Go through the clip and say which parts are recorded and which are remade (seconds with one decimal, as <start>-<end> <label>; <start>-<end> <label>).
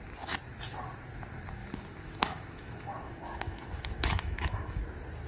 0.0-1.6 recorded; 1.6-4.8 remade; 4.8-5.3 recorded